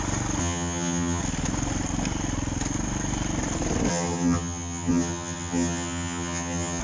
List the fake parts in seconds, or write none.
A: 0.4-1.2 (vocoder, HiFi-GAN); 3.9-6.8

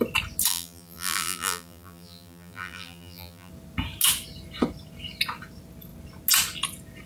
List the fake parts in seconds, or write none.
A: 0.5-3.5 (vocoder, BigVGAN v2)

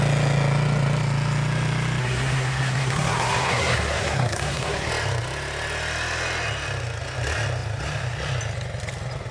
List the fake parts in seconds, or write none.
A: 2.0-4.9 (codec, SNAC)

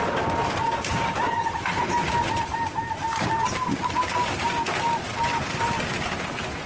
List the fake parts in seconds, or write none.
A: none

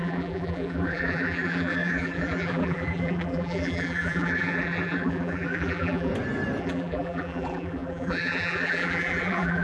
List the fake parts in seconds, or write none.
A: 0.0-6.1 (vocoder, BigVGAN v2); 6.6-9.6

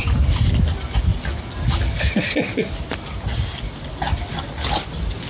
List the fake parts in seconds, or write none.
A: none

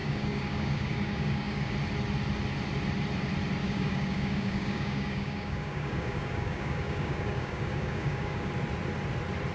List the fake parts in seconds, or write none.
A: 0.0-1.7 (codec, DAC); 3.6-8.5

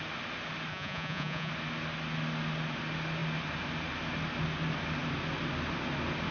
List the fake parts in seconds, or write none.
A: 0.7-1.5 (vocoder, Vocos)